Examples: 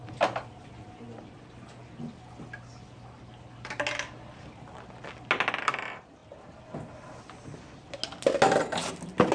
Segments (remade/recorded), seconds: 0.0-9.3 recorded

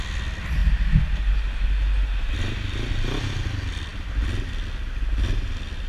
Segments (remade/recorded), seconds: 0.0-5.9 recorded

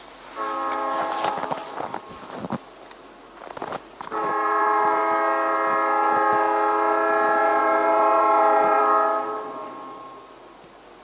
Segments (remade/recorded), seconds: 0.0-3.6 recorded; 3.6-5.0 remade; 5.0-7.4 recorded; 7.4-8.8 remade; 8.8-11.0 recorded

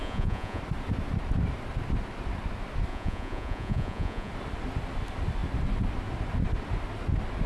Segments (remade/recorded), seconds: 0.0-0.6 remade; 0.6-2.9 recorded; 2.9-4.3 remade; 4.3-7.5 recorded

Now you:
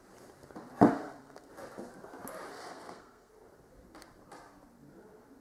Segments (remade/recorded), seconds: 0.0-0.9 recorded; 0.9-1.5 remade; 1.5-2.5 recorded; 2.5-3.3 remade; 3.3-5.4 recorded

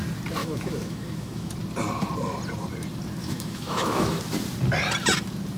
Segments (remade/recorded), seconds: 0.0-0.4 recorded; 0.4-1.5 remade; 1.5-3.2 recorded; 3.2-4.2 remade; 4.2-5.6 recorded

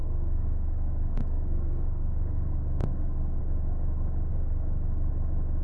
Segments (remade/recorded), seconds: 0.0-3.4 remade; 3.4-4.3 recorded; 4.3-5.1 remade; 5.1-5.6 recorded

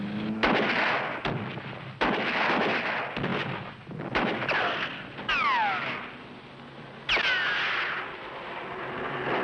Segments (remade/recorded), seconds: 0.0-9.4 recorded